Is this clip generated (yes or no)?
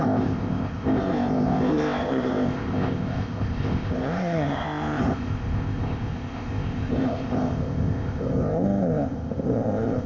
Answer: yes